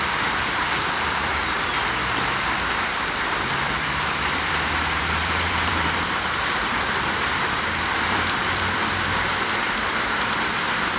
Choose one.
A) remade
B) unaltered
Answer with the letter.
A